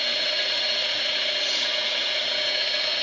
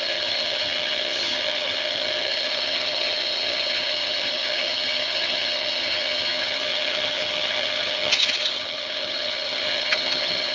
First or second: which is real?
first